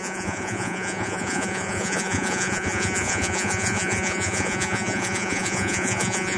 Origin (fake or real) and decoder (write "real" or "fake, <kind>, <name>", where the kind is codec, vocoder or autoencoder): fake, vocoder, Vocos